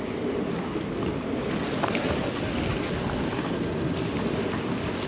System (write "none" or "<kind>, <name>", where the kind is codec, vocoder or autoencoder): none